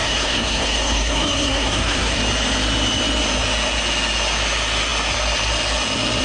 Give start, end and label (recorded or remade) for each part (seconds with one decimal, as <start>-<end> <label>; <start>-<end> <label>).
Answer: 0.0-2.2 remade; 2.2-6.2 recorded

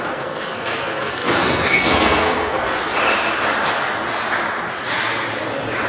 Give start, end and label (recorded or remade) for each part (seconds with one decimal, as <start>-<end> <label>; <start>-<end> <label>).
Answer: 0.0-2.8 remade; 2.8-5.9 recorded